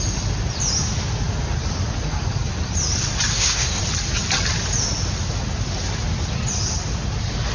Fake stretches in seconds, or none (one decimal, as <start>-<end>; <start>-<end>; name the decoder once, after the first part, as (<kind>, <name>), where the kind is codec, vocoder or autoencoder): 3.3-3.8 (codec, SNAC)